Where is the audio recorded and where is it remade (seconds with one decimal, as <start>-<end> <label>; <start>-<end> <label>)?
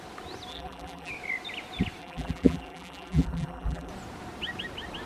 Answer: 0.0-0.5 recorded; 0.5-1.1 remade; 1.1-2.0 recorded; 2.0-3.9 remade; 3.9-5.1 recorded